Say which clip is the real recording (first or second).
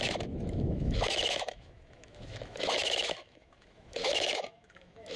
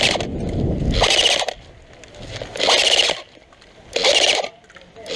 second